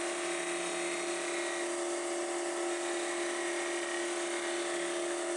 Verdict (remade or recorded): recorded